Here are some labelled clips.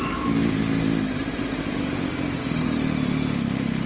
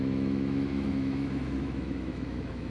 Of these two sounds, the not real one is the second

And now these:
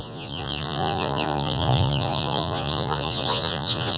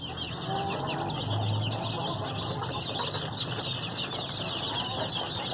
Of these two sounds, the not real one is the first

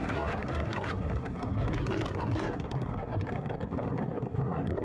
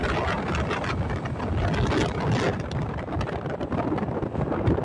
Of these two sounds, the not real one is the first